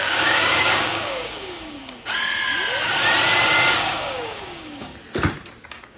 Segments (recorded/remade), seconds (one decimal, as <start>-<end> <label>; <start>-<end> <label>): 0.0-1.8 remade; 1.8-3.8 recorded; 3.8-4.9 remade; 4.9-5.6 recorded; 5.6-6.0 remade